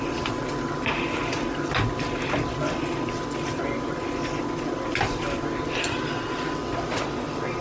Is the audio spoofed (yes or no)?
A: no